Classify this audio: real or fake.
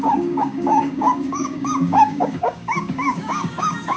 fake